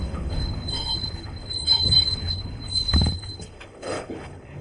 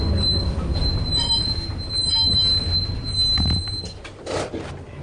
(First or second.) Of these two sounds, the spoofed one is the first